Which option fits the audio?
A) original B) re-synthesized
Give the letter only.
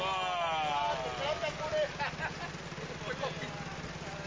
A